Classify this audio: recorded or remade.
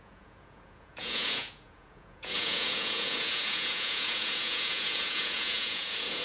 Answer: remade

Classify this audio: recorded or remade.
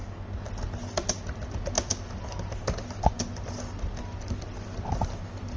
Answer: recorded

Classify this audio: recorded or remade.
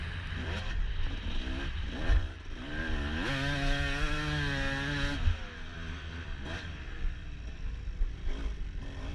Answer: recorded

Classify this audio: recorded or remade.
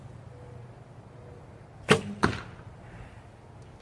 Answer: recorded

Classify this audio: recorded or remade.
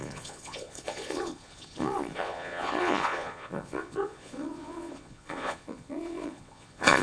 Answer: remade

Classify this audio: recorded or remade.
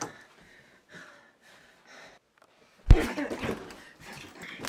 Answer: recorded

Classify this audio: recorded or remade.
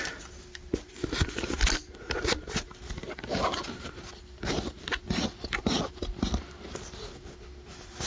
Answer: recorded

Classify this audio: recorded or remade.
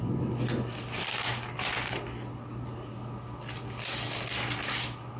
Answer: recorded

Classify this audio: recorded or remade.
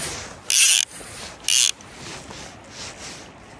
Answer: recorded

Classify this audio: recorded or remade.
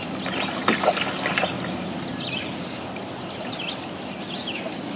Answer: recorded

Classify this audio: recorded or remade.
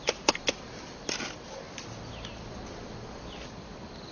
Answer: recorded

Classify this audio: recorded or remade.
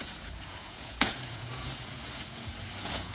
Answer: remade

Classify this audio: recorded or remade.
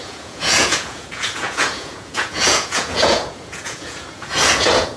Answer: remade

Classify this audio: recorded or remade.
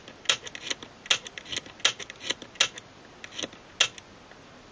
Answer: recorded